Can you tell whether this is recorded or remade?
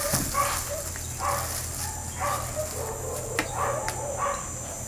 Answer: recorded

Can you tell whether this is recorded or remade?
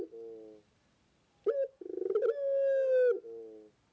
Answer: recorded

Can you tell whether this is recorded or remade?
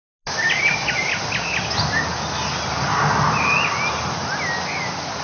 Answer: recorded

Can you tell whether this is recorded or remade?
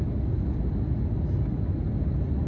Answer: recorded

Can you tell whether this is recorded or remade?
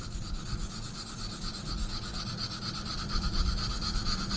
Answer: remade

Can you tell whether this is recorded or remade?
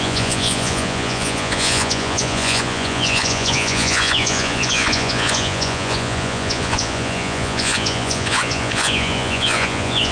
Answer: remade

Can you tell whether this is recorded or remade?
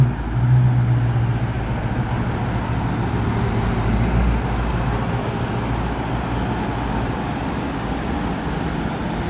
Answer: recorded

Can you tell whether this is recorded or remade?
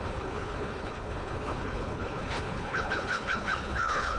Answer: remade